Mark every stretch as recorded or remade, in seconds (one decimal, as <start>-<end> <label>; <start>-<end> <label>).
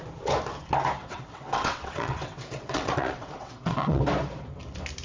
0.0-1.0 recorded; 1.0-4.0 remade; 4.0-5.0 recorded